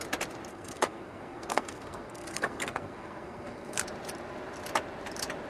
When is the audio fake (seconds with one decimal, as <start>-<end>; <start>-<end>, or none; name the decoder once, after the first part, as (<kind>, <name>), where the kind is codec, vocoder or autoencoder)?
0.5-3.8 (codec, SNAC)